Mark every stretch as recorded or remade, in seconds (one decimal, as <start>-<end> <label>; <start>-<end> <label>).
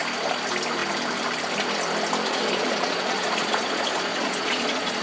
0.0-2.3 recorded; 2.3-5.0 remade